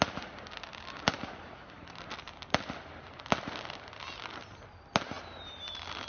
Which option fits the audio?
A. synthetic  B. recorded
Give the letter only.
B